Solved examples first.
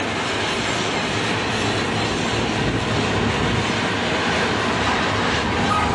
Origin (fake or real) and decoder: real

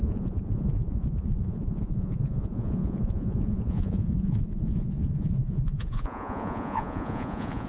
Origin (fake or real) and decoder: fake, vocoder, Vocos